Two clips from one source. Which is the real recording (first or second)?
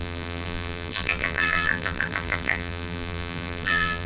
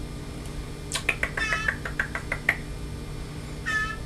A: second